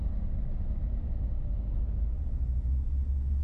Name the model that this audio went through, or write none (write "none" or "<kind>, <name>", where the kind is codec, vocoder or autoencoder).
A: none